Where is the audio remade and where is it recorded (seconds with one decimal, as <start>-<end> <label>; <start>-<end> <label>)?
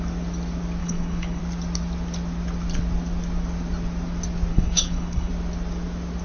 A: 0.0-0.8 recorded; 0.8-1.4 remade; 1.4-4.5 recorded; 4.5-5.3 remade; 5.3-6.2 recorded